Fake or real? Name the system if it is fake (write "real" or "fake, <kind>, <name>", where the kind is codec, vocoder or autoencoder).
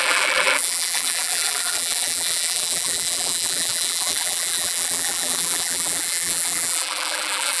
fake, vocoder, BigVGAN v2